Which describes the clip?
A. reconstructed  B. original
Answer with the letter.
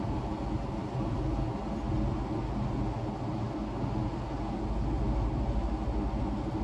B